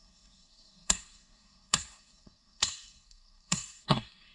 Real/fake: fake